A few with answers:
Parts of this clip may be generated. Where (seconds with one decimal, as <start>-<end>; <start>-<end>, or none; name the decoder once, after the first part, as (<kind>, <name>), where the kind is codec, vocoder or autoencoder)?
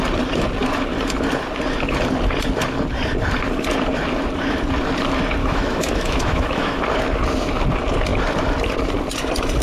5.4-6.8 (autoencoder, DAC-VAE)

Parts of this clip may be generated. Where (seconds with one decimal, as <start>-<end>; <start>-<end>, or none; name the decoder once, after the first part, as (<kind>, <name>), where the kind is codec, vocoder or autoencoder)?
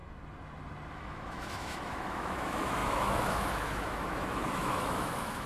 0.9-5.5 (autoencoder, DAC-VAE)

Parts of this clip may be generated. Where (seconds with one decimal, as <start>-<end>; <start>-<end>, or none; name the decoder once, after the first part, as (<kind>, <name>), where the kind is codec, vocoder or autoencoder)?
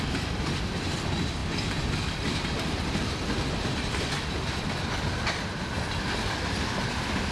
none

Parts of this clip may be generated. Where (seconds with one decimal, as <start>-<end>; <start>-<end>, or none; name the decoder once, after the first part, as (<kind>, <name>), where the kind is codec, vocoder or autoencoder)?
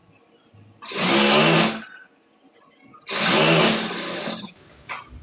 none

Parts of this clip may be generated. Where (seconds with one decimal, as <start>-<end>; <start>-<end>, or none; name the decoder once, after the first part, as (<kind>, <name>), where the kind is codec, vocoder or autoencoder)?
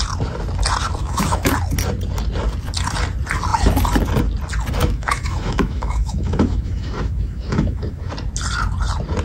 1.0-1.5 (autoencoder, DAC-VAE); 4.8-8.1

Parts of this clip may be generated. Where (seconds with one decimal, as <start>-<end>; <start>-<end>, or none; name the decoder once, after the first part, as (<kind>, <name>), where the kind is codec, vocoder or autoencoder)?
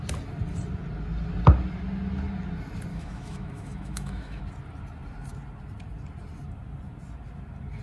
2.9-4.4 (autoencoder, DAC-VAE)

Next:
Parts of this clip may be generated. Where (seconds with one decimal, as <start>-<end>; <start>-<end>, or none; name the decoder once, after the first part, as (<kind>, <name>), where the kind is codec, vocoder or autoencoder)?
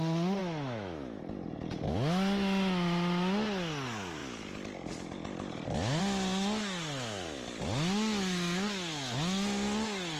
0.4-1.2 (autoencoder, DAC-VAE)